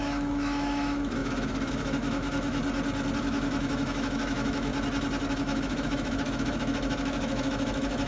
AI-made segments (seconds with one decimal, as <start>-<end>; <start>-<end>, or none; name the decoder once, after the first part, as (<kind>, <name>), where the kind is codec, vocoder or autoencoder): 0.0-2.6 (autoencoder, DAC-VAE); 3.2-4.7; 5.3-8.1